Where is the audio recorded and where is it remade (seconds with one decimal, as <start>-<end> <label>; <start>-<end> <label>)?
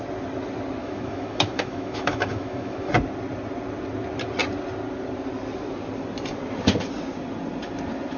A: 0.0-0.8 recorded; 0.8-2.9 remade; 2.9-8.2 recorded